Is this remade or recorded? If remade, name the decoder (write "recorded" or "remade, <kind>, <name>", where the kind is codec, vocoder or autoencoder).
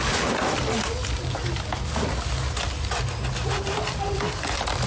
recorded